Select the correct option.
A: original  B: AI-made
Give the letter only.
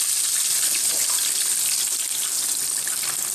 A